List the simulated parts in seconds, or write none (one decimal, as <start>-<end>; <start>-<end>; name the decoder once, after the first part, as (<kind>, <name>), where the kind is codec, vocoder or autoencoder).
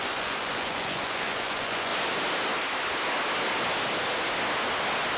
0.0-1.9 (vocoder, Vocos)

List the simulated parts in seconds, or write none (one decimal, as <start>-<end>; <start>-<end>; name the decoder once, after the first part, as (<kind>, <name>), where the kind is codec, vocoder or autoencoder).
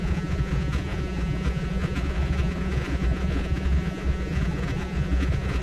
0.0-5.6 (vocoder, Vocos)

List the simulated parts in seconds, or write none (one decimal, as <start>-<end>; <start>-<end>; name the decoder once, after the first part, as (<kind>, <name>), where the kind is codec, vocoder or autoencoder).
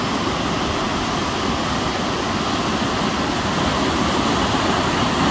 none